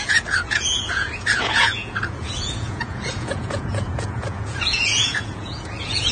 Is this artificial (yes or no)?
yes